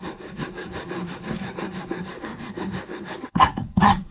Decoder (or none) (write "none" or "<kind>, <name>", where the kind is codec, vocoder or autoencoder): codec, SNAC